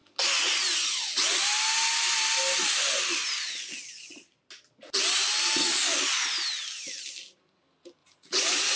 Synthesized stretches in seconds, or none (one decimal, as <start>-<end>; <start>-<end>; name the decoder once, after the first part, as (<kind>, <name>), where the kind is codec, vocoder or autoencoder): 8.0-8.8 (vocoder, Vocos)

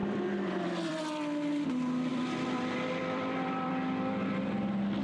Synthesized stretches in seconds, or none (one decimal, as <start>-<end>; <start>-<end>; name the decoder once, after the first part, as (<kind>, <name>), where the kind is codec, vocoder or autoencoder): 0.0-1.0 (vocoder, BigVGAN v2); 2.1-3.7

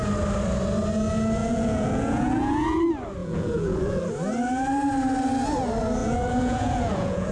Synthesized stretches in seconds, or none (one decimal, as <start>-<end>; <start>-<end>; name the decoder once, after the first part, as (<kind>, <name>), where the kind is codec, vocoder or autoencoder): 1.4-2.8 (vocoder, Vocos); 3.2-4.0; 6.0-7.3

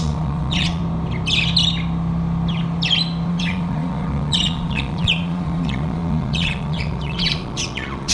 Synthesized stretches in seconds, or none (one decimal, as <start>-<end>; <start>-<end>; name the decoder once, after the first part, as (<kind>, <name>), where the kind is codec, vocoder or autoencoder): 0.0-0.8 (vocoder, Vocos); 3.3-8.1

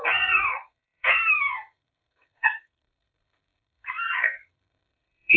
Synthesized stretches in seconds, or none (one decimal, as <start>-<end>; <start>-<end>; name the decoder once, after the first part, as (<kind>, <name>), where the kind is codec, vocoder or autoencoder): 0.0-5.4 (codec, SNAC)